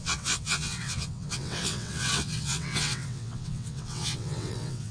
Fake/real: fake